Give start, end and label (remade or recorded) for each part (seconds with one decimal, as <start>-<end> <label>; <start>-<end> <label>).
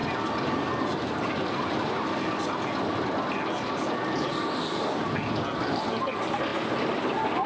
0.0-7.5 recorded